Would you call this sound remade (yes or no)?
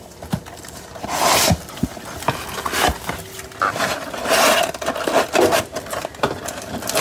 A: no